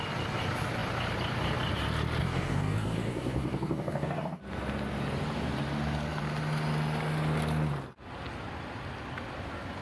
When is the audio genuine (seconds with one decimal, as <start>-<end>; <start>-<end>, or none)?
0.0-2.2; 4.4-9.8